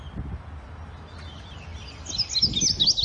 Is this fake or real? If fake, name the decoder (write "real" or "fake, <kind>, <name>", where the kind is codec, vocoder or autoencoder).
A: real